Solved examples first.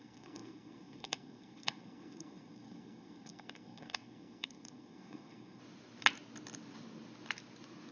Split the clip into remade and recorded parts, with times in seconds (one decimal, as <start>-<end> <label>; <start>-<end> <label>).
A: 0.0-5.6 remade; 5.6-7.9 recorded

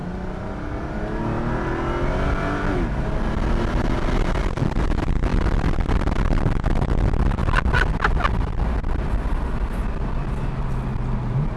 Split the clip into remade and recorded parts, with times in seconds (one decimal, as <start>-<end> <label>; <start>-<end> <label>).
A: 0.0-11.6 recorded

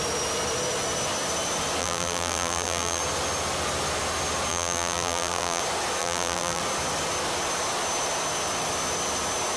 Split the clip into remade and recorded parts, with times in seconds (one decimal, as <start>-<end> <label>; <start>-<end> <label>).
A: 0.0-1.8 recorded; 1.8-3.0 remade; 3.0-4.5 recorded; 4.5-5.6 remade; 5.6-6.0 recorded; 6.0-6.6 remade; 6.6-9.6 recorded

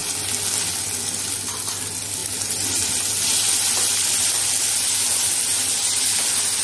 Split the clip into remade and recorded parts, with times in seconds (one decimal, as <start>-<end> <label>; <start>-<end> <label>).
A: 0.0-6.6 recorded